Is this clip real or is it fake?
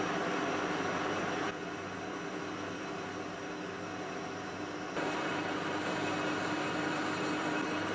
real